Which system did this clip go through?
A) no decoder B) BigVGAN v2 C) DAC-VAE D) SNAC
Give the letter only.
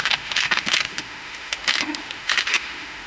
C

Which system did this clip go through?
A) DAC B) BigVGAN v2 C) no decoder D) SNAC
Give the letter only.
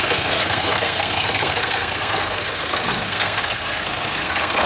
D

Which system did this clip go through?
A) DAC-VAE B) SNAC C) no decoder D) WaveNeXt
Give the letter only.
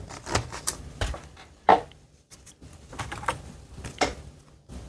C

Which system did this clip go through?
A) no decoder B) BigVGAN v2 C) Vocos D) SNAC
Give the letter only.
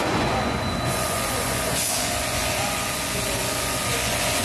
C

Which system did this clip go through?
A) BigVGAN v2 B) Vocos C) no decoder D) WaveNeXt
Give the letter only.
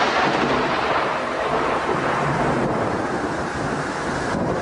A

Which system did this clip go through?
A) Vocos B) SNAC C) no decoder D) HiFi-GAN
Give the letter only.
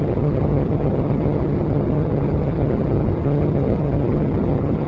D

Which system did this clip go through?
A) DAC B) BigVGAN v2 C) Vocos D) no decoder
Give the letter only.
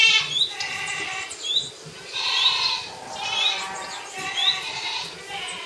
D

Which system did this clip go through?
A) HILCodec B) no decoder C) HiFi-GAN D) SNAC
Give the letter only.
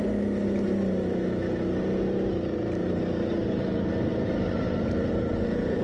B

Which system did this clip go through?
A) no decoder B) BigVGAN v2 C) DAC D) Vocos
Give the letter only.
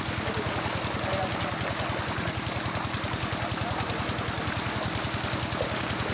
A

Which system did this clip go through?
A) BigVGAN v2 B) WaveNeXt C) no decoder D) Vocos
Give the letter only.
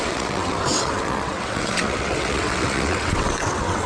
B